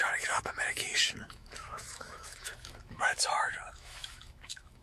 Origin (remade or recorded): remade